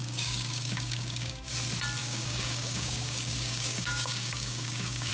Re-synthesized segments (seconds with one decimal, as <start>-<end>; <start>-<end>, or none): 0.0-1.5; 2.0-5.1